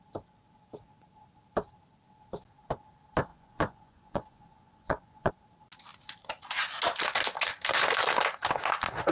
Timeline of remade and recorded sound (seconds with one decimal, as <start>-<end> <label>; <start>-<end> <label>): 0.0-3.3 recorded; 3.3-5.3 remade; 5.3-9.1 recorded